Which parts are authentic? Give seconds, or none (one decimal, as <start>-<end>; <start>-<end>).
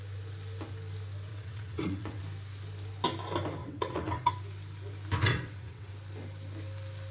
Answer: 0.0-1.3; 2.2-3.6; 4.3-5.2; 5.9-7.1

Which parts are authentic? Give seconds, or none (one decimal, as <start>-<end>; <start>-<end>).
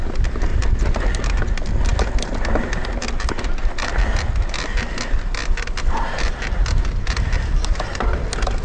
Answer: 0.0-8.6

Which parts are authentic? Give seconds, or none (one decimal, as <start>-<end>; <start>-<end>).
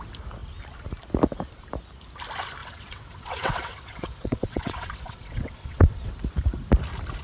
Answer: 0.0-2.6; 6.1-7.2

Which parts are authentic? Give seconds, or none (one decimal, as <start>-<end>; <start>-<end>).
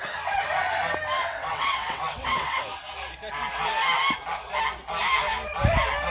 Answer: 0.0-1.3; 2.6-6.1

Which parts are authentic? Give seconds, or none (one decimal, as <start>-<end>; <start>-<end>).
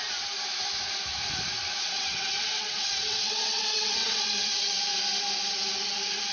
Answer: 0.0-1.8; 4.8-6.3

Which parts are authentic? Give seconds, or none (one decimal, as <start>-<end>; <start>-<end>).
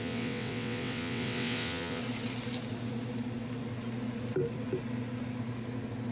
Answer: 2.0-6.1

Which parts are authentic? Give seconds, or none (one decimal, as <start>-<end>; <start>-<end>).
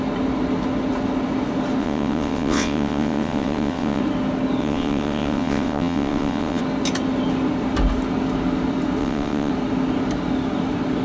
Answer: 0.0-1.8; 4.0-4.6; 6.6-9.0; 9.5-11.0